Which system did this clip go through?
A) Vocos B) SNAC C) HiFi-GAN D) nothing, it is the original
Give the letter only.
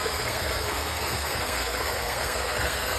B